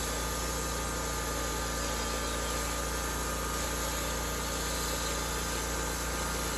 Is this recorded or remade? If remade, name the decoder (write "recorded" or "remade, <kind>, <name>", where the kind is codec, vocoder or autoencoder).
recorded